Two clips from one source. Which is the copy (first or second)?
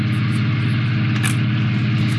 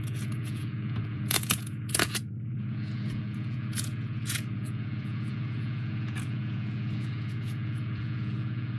second